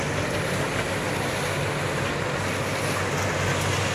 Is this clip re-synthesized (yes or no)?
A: no